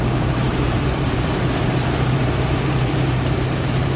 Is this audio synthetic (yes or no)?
yes